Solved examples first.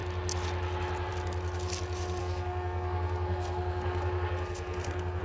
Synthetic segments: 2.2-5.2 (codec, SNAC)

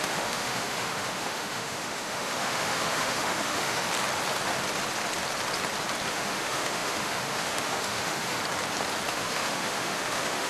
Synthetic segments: 0.0-3.9 (autoencoder, DAC-VAE); 6.1-8.4; 9.1-10.5

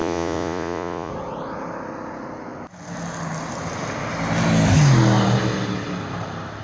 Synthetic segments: 0.0-1.1 (vocoder, Vocos)